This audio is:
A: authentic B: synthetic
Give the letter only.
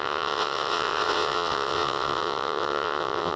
B